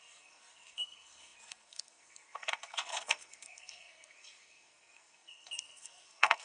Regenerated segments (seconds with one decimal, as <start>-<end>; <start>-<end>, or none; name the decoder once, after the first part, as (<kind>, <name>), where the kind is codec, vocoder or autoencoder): 0.0-6.4 (codec, SNAC)